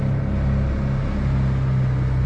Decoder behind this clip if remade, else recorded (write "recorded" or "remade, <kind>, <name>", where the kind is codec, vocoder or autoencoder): recorded